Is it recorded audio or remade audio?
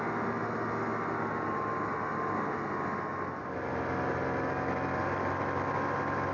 recorded